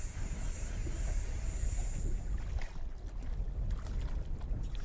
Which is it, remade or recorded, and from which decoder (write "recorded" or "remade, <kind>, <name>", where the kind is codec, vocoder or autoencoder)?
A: recorded